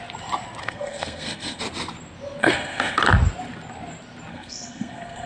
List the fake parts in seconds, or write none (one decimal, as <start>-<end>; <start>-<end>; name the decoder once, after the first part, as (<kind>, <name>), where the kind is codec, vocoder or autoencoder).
0.6-1.6 (codec, SNAC); 2.4-3.0; 4.3-5.3